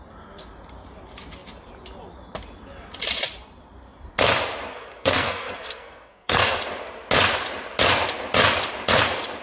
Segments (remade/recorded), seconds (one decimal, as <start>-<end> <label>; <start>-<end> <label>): 0.0-4.7 recorded; 4.7-6.6 remade; 6.6-9.4 recorded

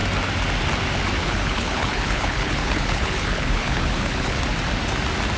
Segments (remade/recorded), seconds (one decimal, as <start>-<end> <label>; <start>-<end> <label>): 0.0-1.2 recorded; 1.2-4.4 remade; 4.4-5.4 recorded

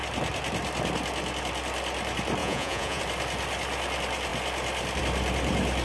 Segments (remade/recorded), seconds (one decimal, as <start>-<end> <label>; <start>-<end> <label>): 0.0-2.4 recorded; 2.4-3.0 remade; 3.0-5.8 recorded

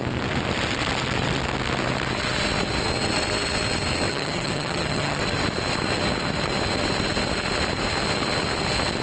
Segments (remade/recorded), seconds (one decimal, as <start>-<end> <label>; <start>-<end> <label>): 0.0-4.1 recorded; 4.1-5.2 remade; 5.2-9.0 recorded

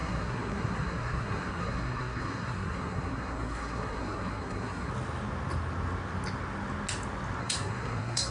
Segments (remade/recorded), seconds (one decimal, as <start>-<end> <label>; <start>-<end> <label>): 0.0-4.9 remade; 4.9-7.4 recorded; 7.4-8.3 remade

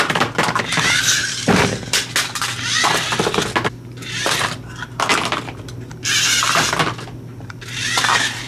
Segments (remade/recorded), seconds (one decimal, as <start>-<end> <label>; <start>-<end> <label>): 0.0-1.2 recorded; 1.2-2.1 remade; 2.1-8.5 recorded